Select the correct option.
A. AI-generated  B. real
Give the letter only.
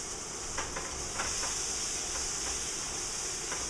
B